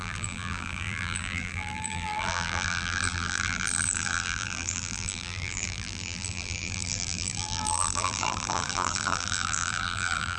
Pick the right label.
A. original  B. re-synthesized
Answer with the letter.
B